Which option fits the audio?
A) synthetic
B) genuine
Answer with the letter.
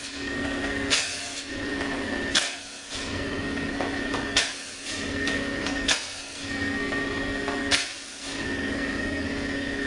A